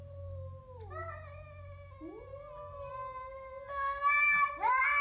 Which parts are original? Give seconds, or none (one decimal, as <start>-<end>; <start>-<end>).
0.0-5.0